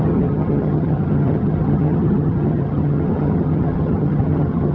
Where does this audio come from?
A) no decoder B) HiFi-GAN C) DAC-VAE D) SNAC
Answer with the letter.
B